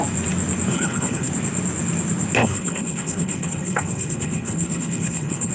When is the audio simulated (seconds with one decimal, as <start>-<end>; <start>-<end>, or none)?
0.7-1.3; 2.4-5.5